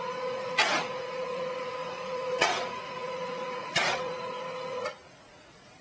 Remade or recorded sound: remade